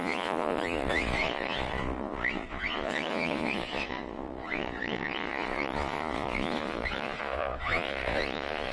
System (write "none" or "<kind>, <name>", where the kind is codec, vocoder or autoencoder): vocoder, Vocos